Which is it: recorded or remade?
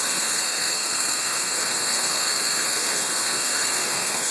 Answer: remade